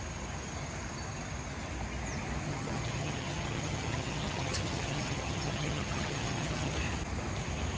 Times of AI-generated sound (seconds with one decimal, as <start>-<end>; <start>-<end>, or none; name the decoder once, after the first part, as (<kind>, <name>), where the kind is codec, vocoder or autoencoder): 2.5-6.7 (vocoder, HiFi-GAN)

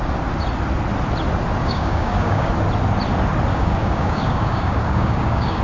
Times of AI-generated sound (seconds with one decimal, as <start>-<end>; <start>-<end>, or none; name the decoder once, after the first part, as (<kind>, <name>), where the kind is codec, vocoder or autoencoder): 1.6-2.5 (codec, DAC); 3.5-5.6

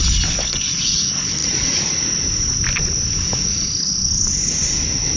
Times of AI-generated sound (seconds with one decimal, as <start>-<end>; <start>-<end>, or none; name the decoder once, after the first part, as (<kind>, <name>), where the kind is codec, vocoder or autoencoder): 1.4-4.5 (vocoder, BigVGAN v2)

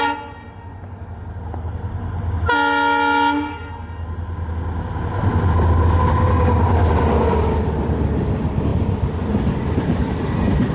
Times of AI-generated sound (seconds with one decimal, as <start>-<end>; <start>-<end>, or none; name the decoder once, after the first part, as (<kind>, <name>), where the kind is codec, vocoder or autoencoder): none

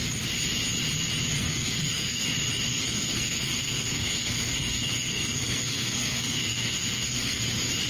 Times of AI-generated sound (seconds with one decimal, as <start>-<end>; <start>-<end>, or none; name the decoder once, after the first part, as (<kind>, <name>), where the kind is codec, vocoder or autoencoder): 1.4-2.3 (codec, SNAC); 2.7-7.4

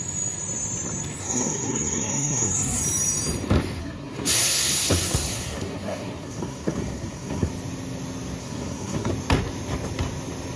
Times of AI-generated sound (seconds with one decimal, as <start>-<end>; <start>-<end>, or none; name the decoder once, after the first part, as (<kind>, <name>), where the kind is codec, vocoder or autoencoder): 1.2-2.8 (codec, SNAC); 3.8-7.5; 8.4-9.1

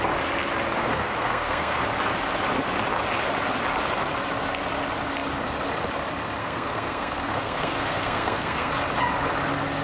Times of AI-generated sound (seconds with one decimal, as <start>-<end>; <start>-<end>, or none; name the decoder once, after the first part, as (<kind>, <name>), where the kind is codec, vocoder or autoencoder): 0.8-1.8 (codec, SNAC); 6.4-8.7